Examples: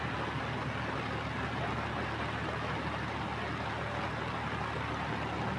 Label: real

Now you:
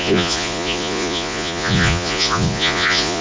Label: fake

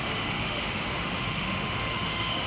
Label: fake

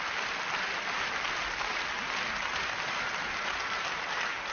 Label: real